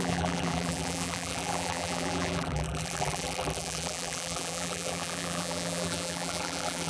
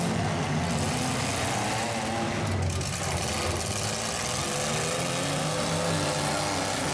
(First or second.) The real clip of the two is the second